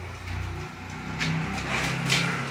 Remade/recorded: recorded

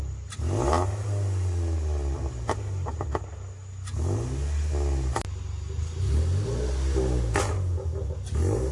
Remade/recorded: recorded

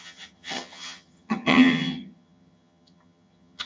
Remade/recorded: remade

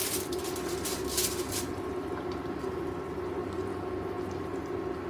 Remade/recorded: recorded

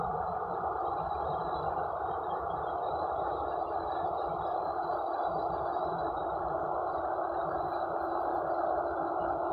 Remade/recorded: remade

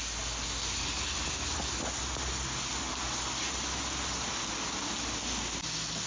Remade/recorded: recorded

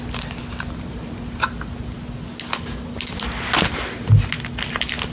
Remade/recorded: recorded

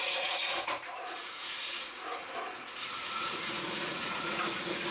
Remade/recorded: remade